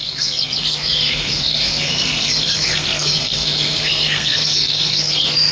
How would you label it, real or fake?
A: fake